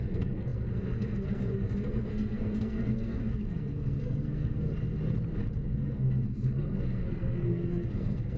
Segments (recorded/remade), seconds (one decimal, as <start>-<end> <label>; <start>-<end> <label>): 0.0-4.7 remade; 4.7-5.7 recorded; 5.7-8.4 remade